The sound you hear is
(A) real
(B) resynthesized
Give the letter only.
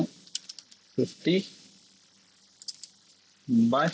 A